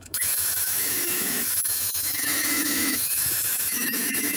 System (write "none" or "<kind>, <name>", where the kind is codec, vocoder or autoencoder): autoencoder, DAC-VAE